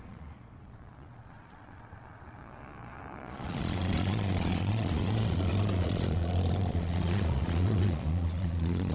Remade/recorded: remade